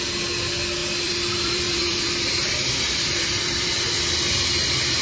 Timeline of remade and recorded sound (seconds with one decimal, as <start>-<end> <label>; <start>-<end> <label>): 0.0-0.8 recorded; 0.8-3.8 remade; 3.8-5.0 recorded